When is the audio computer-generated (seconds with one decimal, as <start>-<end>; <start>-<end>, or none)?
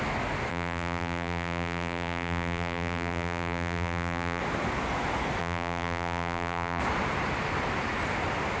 0.5-4.4; 5.4-6.8